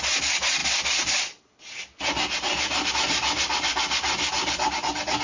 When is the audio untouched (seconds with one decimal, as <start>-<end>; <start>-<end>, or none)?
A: 0.0-5.2